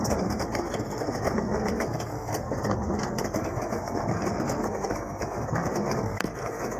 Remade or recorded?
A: remade